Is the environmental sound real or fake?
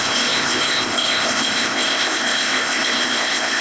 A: fake